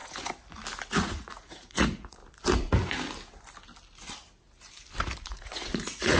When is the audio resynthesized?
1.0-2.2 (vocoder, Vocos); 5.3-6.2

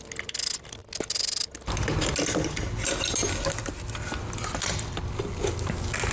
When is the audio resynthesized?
none

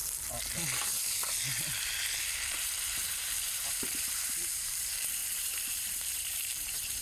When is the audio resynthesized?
2.2-7.0 (vocoder, BigVGAN v2)

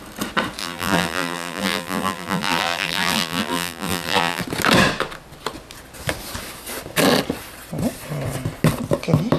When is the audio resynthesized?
0.6-4.4 (vocoder, BigVGAN v2)

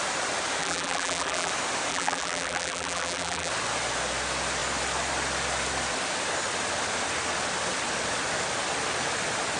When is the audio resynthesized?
0.6-1.5 (vocoder, BigVGAN v2); 1.9-3.5

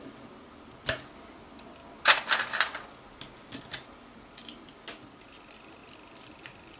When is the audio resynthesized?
none

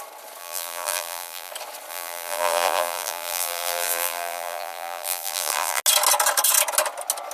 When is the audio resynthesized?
0.4-1.5 (vocoder, BigVGAN v2); 1.9-5.8

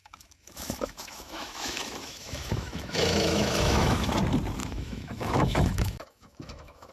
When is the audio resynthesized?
0.0-4.1 (autoencoder, DAC-VAE); 4.6-6.9